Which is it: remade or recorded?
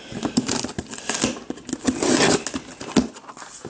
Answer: recorded